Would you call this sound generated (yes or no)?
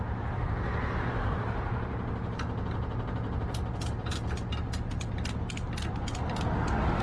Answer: no